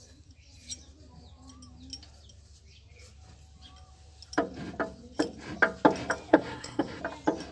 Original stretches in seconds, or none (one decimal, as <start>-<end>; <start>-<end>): 0.0-6.3; 7.0-7.5